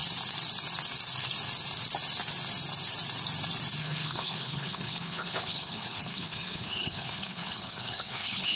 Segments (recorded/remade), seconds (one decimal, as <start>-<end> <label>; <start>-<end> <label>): 0.0-3.8 recorded; 3.8-8.6 remade